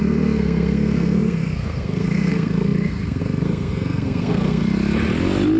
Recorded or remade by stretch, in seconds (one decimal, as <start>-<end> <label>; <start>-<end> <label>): 0.0-4.6 remade; 4.6-5.6 recorded